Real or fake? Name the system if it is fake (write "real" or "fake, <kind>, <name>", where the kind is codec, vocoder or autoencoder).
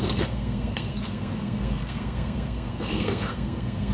fake, codec, SNAC